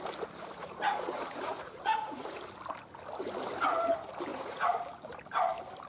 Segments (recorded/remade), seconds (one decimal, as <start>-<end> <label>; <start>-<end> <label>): 0.0-0.6 recorded; 0.6-2.4 remade; 2.4-4.3 recorded; 4.3-4.8 remade; 4.8-5.9 recorded